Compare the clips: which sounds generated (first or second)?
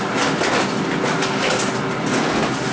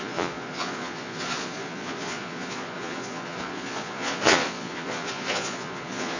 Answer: second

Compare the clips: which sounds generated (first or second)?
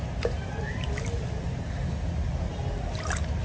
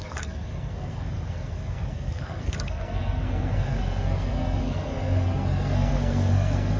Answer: second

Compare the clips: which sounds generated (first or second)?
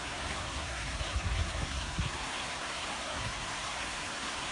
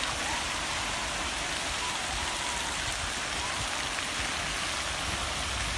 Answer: first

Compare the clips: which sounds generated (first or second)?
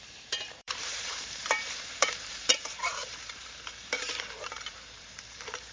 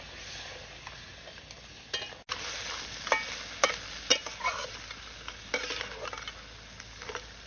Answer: first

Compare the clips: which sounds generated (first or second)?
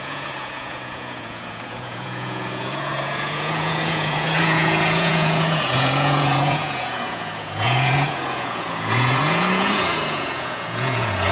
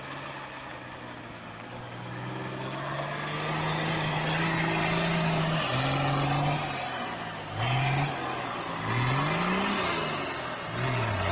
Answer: first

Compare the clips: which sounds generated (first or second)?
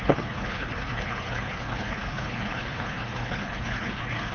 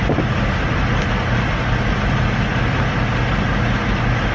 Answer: first